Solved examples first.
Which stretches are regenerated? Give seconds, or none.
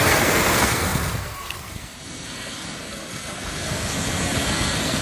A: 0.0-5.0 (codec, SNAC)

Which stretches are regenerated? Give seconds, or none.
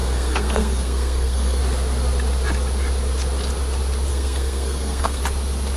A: 0.0-1.6 (codec, SNAC); 4.1-5.2